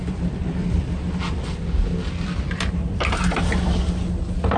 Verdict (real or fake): real